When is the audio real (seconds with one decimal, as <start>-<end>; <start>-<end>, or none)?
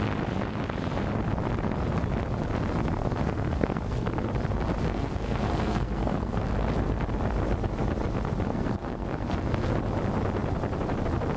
0.0-2.8; 4.3-4.8; 6.4-8.5; 9.7-11.4